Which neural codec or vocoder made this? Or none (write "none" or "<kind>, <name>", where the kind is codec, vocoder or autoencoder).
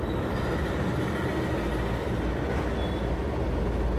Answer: none